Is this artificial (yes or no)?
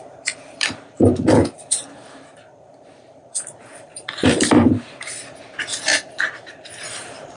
yes